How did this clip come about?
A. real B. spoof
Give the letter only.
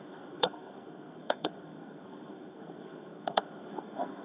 B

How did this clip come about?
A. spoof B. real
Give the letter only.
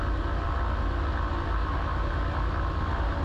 B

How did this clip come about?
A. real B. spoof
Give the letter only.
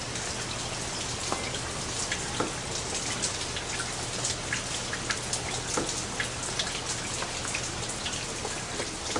A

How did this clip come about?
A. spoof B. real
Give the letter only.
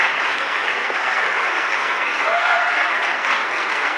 A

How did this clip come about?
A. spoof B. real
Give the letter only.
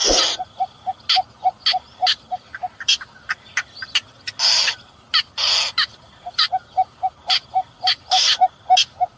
B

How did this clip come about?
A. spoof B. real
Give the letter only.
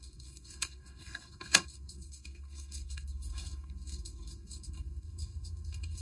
A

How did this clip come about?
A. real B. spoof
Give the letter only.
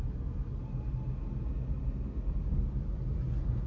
A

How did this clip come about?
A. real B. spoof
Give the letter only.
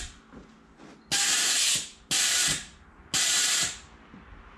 A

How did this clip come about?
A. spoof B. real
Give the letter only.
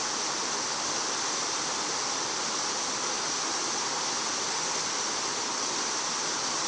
B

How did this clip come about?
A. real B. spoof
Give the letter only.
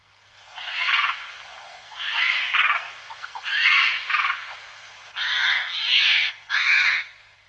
B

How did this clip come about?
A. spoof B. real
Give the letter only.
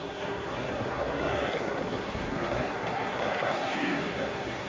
A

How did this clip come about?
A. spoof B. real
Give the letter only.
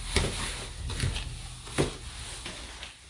B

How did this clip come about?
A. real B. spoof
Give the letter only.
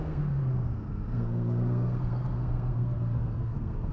B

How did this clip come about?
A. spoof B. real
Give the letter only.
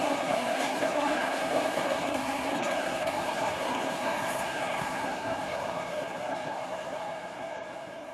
A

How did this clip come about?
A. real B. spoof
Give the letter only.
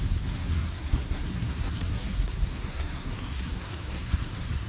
B